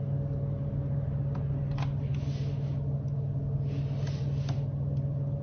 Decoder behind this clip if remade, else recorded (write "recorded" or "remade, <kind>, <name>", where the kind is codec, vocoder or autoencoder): recorded